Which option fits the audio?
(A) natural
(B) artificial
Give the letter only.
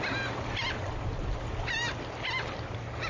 A